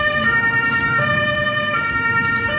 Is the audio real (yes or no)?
yes